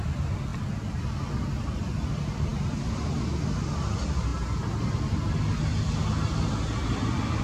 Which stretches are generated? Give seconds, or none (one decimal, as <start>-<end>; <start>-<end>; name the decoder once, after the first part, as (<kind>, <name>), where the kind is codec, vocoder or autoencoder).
none